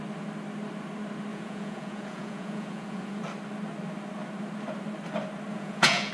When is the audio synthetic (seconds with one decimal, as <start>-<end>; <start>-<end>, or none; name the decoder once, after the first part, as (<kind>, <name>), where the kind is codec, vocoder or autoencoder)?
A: 1.3-3.2 (vocoder, Vocos); 5.5-6.1